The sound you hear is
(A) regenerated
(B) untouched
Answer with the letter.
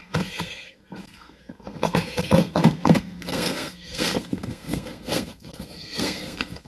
A